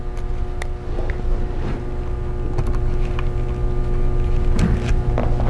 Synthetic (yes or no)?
no